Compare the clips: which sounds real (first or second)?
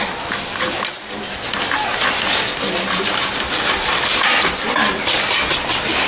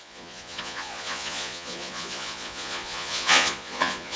first